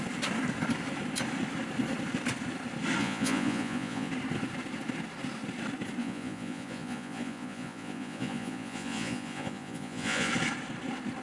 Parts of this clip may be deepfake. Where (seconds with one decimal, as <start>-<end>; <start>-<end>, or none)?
3.0-4.1; 6.0-10.3